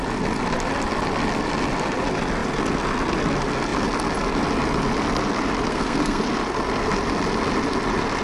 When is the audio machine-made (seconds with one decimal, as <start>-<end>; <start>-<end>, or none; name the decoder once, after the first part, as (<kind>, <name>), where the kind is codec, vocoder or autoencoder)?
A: 5.7-6.2 (codec, SNAC)